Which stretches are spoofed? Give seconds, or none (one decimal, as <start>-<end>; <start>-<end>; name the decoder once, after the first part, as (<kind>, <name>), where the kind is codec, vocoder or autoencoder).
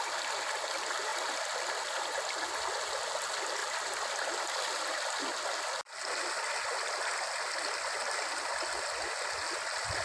none